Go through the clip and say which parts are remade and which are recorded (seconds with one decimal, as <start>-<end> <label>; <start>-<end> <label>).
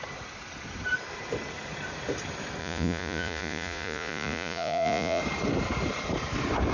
0.0-2.6 recorded; 2.6-5.2 remade; 5.2-6.7 recorded